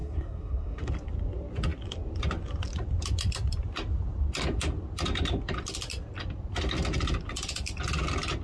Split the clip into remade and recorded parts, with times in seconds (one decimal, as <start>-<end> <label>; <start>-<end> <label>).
0.0-0.9 remade; 0.9-8.4 recorded